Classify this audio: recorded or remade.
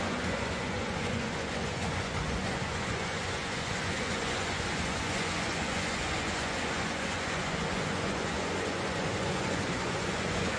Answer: remade